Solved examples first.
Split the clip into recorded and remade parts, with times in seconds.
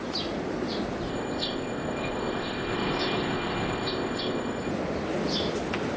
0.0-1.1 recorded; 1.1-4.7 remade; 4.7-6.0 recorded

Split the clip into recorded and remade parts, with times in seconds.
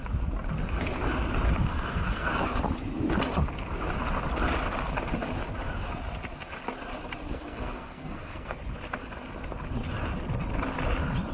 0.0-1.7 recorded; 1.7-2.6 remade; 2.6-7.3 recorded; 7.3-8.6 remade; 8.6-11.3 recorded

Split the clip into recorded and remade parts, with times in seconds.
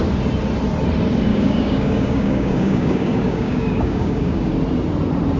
0.0-1.3 recorded; 1.3-4.5 remade; 4.5-5.4 recorded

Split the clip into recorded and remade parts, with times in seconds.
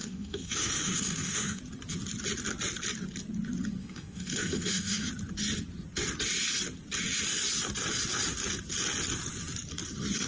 0.0-1.6 remade; 1.6-3.8 recorded; 3.8-5.1 remade; 5.1-10.3 recorded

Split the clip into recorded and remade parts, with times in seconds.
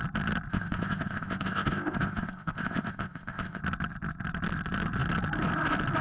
0.0-0.5 recorded; 0.5-3.6 remade; 3.6-6.0 recorded